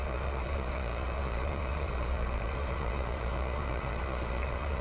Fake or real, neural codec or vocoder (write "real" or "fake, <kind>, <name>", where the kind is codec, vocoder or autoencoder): fake, vocoder, Vocos